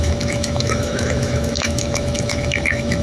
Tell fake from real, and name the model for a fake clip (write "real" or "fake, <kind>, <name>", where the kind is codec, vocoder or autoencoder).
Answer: fake, autoencoder, DAC-VAE